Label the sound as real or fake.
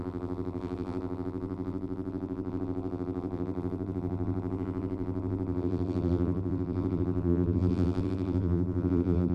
fake